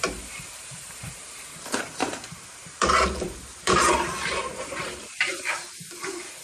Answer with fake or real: fake